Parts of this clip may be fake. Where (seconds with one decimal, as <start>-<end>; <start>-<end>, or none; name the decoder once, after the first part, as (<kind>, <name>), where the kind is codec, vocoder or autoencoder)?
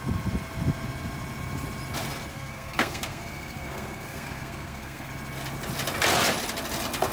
2.3-5.1 (codec, SNAC)